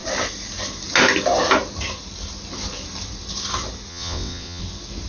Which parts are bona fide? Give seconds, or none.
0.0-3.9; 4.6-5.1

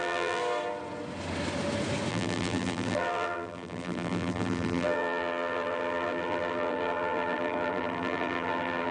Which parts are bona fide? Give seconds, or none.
0.4-2.1

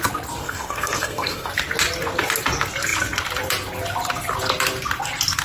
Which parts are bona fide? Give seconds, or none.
0.0-0.4; 1.5-5.4